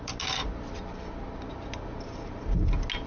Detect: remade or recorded recorded